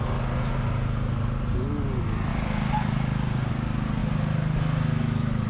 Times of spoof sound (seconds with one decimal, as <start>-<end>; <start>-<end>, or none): none